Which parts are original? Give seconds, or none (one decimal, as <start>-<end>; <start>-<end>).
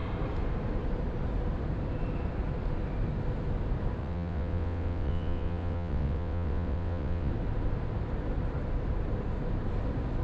0.0-4.0; 7.3-10.2